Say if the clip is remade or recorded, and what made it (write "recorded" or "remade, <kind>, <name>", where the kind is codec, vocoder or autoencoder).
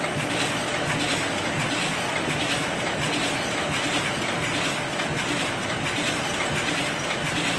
recorded